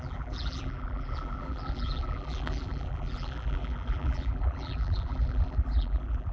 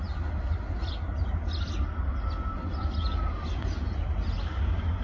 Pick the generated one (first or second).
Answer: first